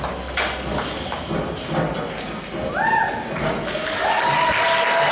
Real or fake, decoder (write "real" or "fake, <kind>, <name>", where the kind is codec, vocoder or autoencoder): real